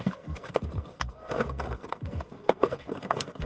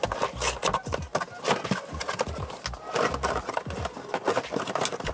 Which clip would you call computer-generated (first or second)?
first